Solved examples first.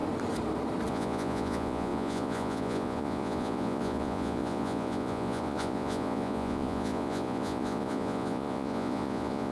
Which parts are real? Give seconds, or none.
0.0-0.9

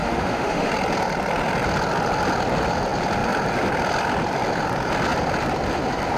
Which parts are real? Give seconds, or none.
0.7-6.2

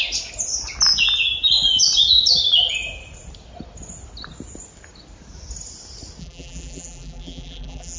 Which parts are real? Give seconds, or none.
0.0-6.2